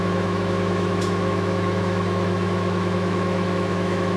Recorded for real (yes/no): no